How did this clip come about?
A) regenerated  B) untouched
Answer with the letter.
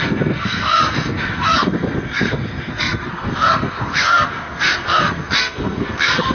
A